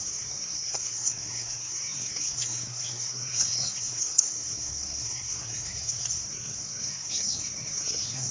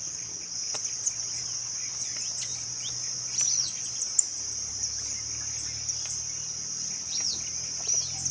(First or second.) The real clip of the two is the second